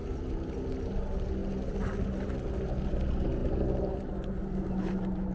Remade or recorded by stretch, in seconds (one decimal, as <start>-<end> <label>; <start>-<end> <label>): 0.0-5.3 recorded